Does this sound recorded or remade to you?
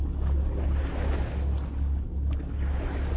recorded